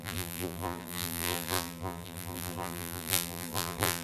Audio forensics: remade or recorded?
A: remade